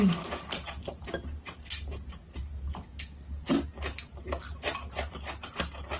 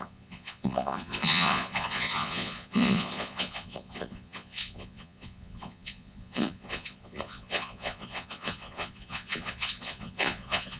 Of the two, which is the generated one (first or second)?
second